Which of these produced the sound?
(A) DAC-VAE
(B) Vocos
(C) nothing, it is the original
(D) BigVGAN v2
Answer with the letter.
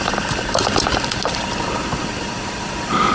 D